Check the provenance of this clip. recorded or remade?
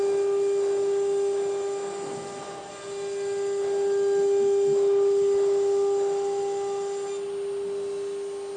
recorded